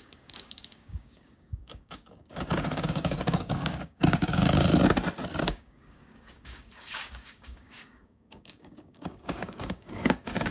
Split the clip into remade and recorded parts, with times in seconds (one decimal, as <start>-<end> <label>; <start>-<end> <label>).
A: 0.0-4.7 remade; 4.7-5.4 recorded; 5.4-10.5 remade